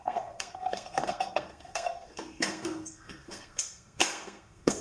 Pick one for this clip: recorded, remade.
remade